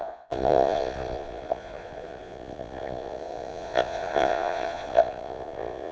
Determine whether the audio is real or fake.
fake